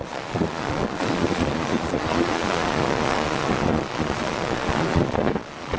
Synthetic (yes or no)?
yes